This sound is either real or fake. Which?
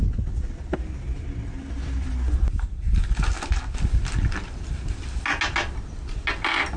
real